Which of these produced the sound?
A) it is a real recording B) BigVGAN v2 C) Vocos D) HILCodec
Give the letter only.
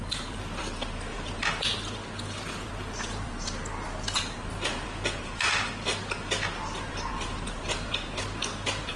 A